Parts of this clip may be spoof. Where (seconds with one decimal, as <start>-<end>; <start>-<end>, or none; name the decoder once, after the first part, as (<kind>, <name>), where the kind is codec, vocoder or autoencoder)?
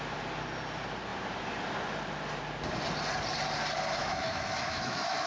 4.0-5.3 (autoencoder, DAC-VAE)